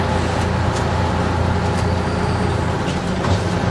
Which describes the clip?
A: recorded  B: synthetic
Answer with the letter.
A